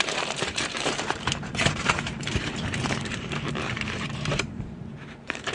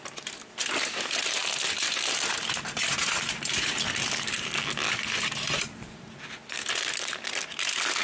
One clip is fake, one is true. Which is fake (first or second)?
first